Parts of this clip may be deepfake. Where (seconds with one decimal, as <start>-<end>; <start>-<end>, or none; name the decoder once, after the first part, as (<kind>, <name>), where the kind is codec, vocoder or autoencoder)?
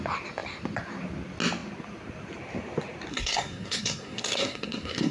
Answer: 3.1-5.1 (codec, SNAC)